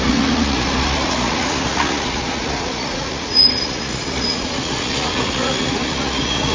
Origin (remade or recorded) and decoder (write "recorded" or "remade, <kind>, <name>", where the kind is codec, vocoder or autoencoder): remade, vocoder, Vocos